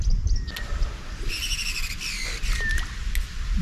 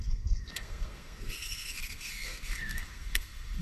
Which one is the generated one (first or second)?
second